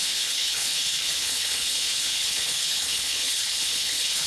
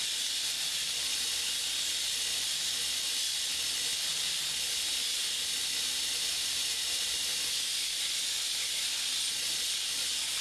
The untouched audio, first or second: second